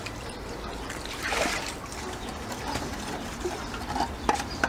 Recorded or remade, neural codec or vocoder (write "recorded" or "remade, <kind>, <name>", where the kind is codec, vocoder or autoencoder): remade, vocoder, BigVGAN v2